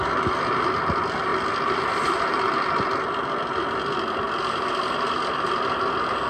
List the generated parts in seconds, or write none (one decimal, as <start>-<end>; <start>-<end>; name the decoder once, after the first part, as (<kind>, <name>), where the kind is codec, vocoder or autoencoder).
1.3-4.2 (vocoder, BigVGAN v2)